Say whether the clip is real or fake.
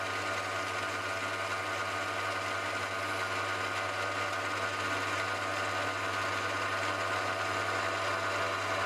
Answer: real